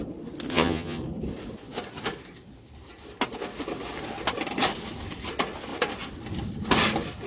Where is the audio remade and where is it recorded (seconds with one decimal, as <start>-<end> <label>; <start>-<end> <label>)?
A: 0.0-0.5 recorded; 0.5-1.0 remade; 1.0-7.3 recorded